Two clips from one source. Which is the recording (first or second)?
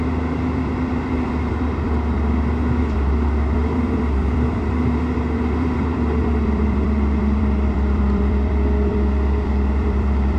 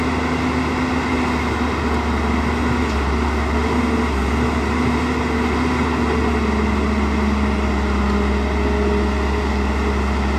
second